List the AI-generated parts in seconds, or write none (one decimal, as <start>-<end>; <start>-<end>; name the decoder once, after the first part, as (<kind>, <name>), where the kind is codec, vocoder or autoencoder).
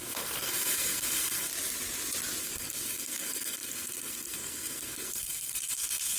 0.0-1.5 (codec, SNAC); 2.4-6.2